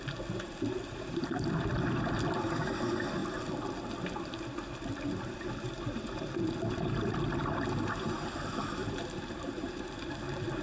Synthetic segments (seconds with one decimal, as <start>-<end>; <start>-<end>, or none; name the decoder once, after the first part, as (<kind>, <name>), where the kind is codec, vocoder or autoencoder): 8.8-9.8 (vocoder, BigVGAN v2)